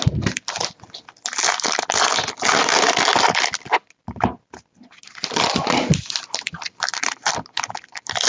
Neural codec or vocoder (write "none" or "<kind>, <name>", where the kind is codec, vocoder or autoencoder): none